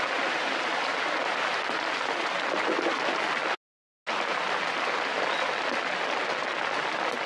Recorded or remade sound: recorded